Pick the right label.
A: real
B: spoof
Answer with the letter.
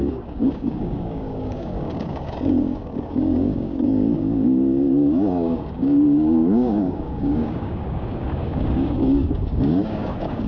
B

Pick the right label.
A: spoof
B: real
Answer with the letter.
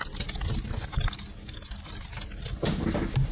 B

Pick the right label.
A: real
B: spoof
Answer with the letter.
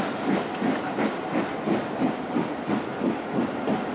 A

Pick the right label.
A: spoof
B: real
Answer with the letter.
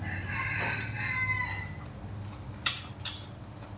B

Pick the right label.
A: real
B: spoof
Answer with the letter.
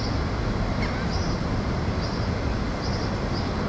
A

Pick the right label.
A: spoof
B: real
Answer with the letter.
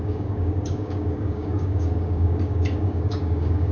A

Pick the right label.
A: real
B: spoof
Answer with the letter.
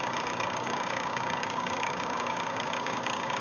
B